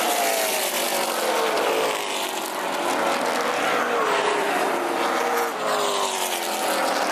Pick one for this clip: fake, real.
real